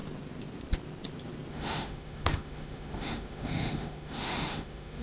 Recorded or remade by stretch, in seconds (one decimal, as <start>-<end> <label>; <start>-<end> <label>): 0.0-1.5 recorded; 1.5-5.0 remade

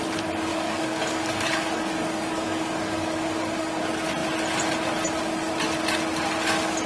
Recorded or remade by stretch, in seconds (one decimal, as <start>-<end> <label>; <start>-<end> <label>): 0.0-0.5 recorded; 0.5-3.8 remade; 3.8-6.9 recorded

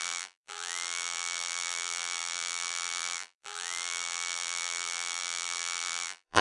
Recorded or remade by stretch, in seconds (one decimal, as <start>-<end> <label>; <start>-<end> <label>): 0.0-6.4 remade